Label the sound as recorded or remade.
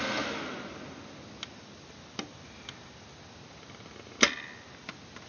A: recorded